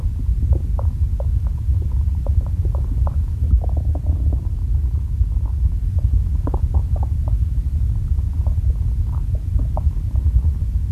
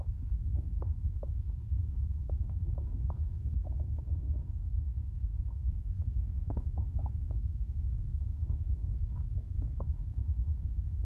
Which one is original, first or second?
first